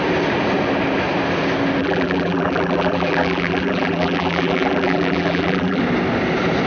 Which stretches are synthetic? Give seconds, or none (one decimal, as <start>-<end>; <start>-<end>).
1.8-5.8